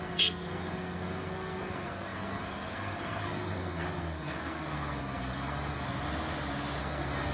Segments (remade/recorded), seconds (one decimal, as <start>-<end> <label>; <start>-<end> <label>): 0.0-5.8 remade; 5.8-6.8 recorded; 6.8-7.3 remade